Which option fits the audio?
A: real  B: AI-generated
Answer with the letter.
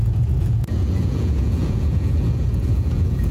B